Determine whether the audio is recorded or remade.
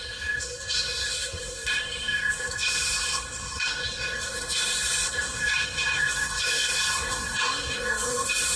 remade